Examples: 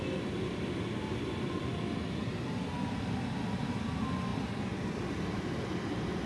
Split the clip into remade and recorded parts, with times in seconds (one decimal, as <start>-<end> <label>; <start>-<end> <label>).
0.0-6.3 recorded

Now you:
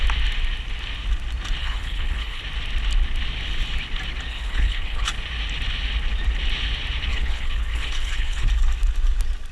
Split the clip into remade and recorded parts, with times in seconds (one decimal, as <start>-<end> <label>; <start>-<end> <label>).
0.0-1.6 recorded; 1.6-2.4 remade; 2.4-4.3 recorded; 4.3-5.1 remade; 5.1-7.1 recorded; 7.1-8.5 remade; 8.5-9.5 recorded

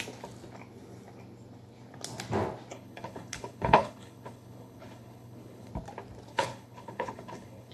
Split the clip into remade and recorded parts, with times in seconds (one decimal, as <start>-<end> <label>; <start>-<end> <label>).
0.0-2.7 recorded; 2.7-5.7 remade; 5.7-6.3 recorded; 6.3-7.7 remade

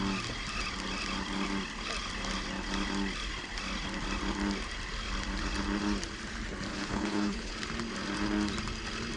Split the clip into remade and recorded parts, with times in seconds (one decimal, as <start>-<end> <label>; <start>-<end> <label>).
0.0-6.7 recorded; 6.7-7.5 remade; 7.5-9.2 recorded

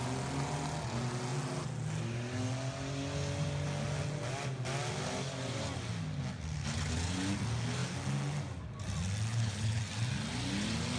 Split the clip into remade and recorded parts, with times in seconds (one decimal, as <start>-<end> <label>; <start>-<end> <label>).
0.0-9.3 recorded; 9.3-9.8 remade; 9.8-11.0 recorded

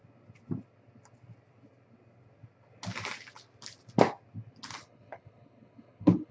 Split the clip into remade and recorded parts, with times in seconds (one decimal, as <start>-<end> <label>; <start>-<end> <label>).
0.0-4.8 recorded; 4.8-6.3 remade

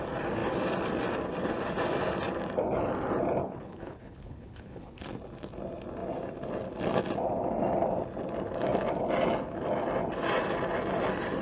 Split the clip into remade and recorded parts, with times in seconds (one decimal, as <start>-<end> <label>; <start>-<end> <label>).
0.0-3.4 recorded; 3.4-5.0 remade; 5.0-11.4 recorded